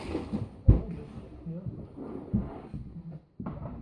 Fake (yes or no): no